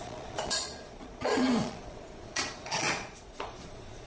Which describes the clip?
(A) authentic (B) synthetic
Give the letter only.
B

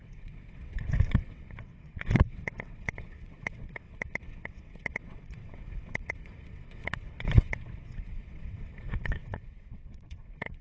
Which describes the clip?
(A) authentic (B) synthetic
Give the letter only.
B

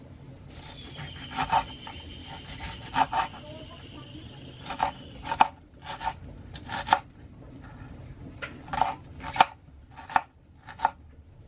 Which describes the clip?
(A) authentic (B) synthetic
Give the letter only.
A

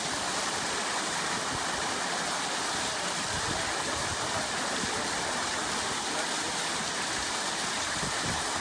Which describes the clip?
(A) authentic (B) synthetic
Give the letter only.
A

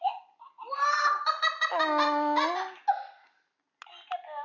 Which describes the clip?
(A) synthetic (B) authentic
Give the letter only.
B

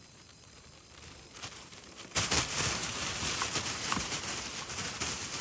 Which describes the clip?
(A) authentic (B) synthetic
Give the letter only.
B